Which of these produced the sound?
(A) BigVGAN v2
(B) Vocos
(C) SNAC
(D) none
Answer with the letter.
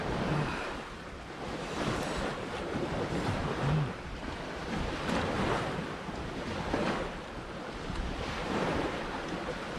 D